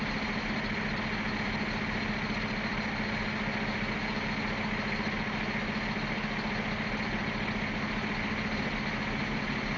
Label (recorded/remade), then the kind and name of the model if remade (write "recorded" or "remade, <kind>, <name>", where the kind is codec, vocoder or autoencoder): recorded